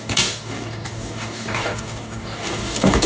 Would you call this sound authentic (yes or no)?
no